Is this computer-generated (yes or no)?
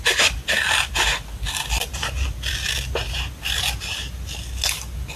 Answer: no